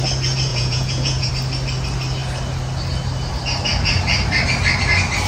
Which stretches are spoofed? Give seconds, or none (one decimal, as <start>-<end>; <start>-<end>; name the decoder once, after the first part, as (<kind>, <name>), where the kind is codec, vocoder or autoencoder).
0.5-1.3 (vocoder, Vocos)